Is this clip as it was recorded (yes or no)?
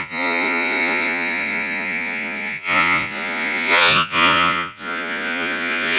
no